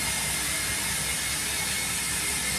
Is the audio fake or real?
real